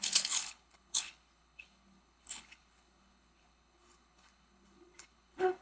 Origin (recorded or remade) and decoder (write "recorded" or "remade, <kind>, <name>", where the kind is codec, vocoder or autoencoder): remade, codec, HILCodec